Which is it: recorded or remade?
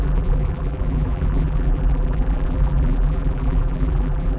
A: remade